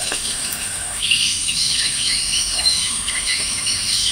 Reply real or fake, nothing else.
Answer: fake